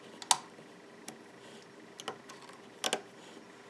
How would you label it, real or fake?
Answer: real